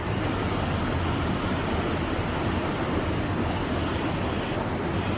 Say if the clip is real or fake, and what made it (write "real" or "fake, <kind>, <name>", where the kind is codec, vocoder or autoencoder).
real